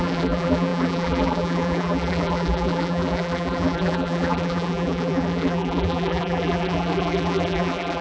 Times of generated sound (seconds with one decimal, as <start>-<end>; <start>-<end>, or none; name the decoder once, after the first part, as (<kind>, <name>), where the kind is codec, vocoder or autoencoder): 0.0-8.0 (vocoder, BigVGAN v2)